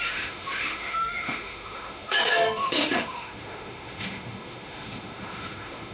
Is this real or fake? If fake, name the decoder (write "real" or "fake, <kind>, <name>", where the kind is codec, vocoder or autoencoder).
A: fake, autoencoder, DAC-VAE